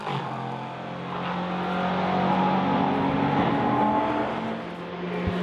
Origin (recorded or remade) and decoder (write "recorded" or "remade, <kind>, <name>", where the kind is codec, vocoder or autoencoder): recorded